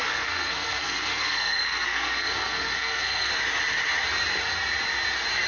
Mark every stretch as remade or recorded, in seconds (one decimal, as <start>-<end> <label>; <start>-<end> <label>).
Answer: 0.0-3.3 remade; 3.3-5.5 recorded